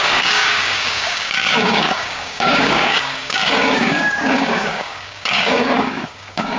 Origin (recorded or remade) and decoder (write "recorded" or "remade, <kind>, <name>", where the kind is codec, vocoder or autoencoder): remade, codec, DAC